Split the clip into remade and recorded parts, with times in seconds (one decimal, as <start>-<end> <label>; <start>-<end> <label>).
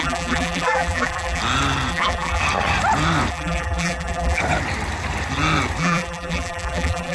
0.0-1.4 remade; 1.4-1.9 recorded; 1.9-2.4 remade; 2.4-3.3 recorded; 3.3-4.4 remade; 4.4-5.8 recorded; 5.8-7.1 remade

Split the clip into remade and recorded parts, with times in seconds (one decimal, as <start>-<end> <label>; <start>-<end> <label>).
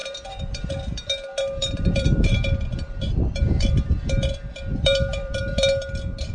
0.0-0.7 remade; 0.7-1.6 recorded; 1.6-5.4 remade; 5.4-6.3 recorded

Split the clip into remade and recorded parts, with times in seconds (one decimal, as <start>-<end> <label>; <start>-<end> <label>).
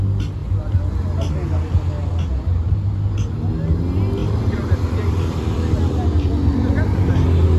0.0-4.2 recorded; 4.2-6.7 remade; 6.7-7.6 recorded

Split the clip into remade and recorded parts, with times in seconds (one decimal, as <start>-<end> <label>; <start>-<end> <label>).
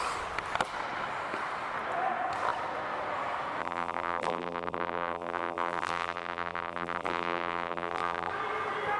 0.0-3.6 recorded; 3.6-8.3 remade; 8.3-9.0 recorded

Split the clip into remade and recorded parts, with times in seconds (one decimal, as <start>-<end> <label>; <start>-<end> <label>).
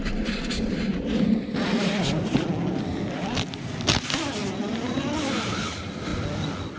0.0-0.9 recorded; 0.9-2.5 remade; 2.5-6.8 recorded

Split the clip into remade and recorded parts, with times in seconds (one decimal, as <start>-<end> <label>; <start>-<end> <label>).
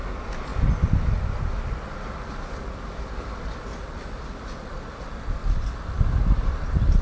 0.0-7.0 recorded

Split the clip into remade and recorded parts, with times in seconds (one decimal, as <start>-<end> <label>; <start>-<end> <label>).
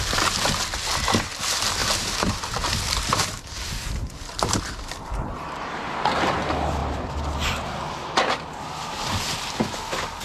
0.0-1.8 recorded; 1.8-4.6 remade; 4.6-10.2 recorded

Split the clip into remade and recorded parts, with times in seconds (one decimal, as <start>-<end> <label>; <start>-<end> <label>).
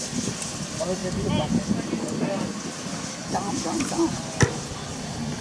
0.0-5.4 recorded